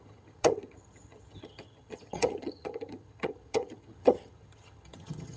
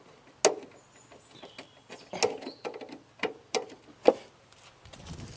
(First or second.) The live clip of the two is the second